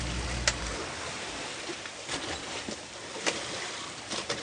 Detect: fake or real real